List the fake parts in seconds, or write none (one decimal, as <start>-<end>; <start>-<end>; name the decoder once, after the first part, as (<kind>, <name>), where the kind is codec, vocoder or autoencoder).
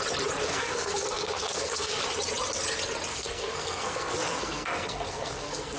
0.4-2.0 (codec, SNAC); 3.1-5.8